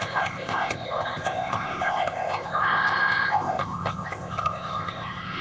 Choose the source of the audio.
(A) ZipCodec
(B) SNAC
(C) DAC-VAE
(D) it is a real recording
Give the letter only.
A